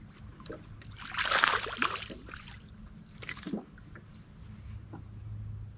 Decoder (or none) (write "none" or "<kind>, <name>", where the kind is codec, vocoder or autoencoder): none